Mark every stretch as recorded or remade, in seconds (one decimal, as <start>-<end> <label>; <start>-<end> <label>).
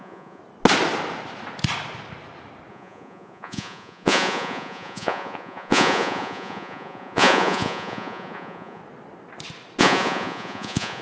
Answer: 0.0-0.4 remade; 0.4-2.7 recorded; 2.7-8.8 remade; 8.8-9.8 recorded; 9.8-11.0 remade